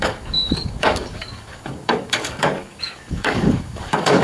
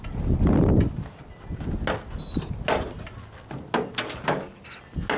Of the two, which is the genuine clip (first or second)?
second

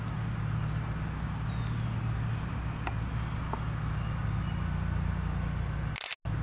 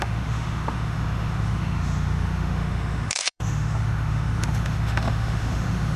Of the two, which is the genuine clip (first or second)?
first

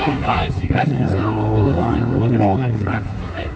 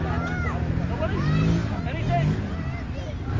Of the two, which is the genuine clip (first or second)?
second